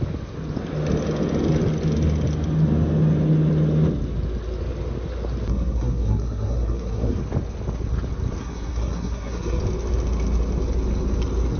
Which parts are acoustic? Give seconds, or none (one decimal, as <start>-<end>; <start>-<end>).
0.0-5.5; 7.2-8.4; 9.6-11.6